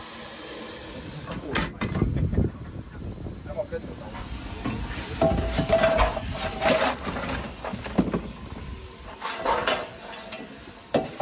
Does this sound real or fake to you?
real